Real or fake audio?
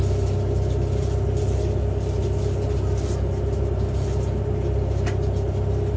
real